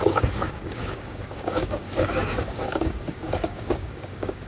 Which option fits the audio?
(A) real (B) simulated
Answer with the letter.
B